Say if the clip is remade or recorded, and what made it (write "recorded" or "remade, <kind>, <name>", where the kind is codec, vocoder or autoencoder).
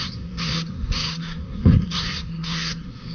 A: remade, codec, SNAC